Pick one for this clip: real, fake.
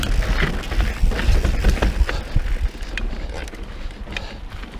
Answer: real